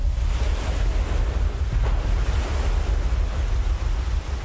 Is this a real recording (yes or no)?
yes